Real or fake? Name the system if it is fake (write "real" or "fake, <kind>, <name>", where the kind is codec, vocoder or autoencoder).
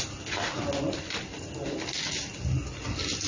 real